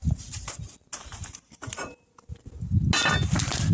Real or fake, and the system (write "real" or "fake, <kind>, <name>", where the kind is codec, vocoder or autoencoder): real